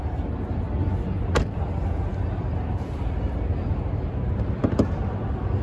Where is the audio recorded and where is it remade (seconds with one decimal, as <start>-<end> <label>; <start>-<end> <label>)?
0.0-5.6 recorded

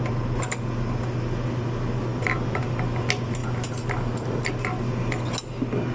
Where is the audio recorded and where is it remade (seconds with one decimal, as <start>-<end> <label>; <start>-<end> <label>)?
0.0-2.1 recorded; 2.1-2.6 remade; 2.6-5.9 recorded

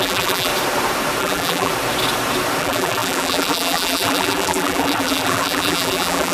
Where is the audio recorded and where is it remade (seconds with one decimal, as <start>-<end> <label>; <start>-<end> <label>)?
0.0-0.5 remade; 0.5-1.2 recorded; 1.2-1.7 remade; 1.7-2.6 recorded; 2.6-6.3 remade

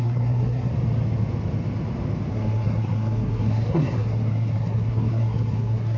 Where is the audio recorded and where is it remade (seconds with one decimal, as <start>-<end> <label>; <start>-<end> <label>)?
0.0-0.7 remade; 0.7-2.3 recorded; 2.3-6.0 remade

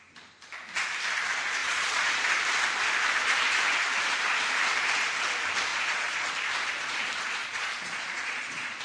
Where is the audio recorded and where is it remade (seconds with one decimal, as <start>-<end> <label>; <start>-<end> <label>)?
0.0-1.6 recorded; 1.6-2.3 remade; 2.3-5.7 recorded; 5.7-6.3 remade; 6.3-7.4 recorded; 7.4-8.8 remade

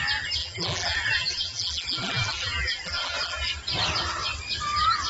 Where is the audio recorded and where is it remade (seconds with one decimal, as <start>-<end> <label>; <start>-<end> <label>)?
0.0-0.4 recorded; 0.4-3.5 remade; 3.5-5.1 recorded

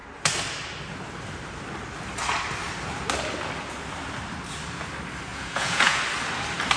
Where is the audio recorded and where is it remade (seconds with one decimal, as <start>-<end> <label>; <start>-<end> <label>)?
0.0-5.3 recorded; 5.3-6.0 remade; 6.0-6.8 recorded